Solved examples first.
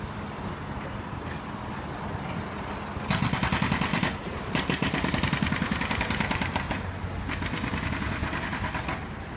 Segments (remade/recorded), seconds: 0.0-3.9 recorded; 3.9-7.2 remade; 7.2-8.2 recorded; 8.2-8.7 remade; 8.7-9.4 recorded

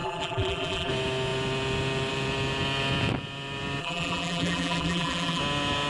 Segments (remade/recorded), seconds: 0.0-0.9 remade; 0.9-3.8 recorded; 3.8-5.4 remade; 5.4-5.9 recorded

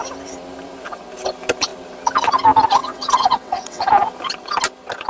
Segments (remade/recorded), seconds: 0.0-2.8 recorded; 2.8-3.9 remade; 3.9-5.1 recorded

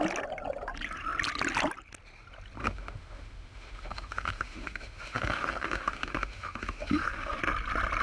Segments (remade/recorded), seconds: 0.0-2.6 recorded; 2.6-7.4 remade; 7.4-8.0 recorded

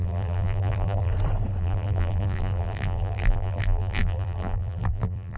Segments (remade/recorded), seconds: 0.0-1.1 remade; 1.1-1.6 recorded; 1.6-5.4 remade